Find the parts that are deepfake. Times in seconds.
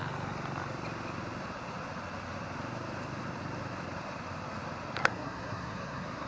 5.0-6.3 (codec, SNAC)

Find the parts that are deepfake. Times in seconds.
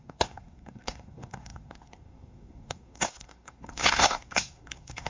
0.0-5.1 (codec, SNAC)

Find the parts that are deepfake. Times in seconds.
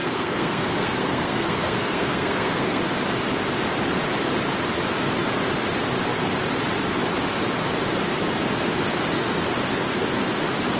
0.0-2.8 (codec, SNAC)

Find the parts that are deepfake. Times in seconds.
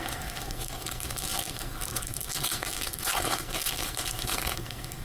0.0-5.0 (codec, SNAC)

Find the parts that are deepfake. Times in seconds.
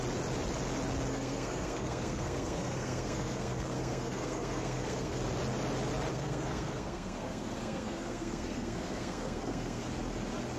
1.1-5.2 (codec, SNAC); 6.1-9.8